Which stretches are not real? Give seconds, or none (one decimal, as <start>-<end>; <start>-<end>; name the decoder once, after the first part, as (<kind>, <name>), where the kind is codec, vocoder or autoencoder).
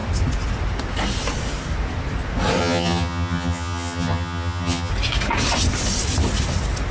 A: 2.6-4.9 (vocoder, HiFi-GAN)